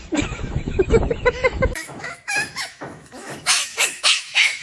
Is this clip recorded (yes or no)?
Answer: no